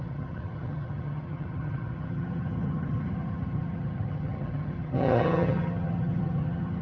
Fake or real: fake